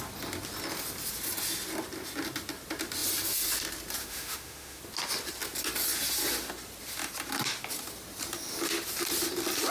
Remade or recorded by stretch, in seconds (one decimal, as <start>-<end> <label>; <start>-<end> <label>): 0.0-4.0 recorded; 4.0-4.8 remade; 4.8-9.7 recorded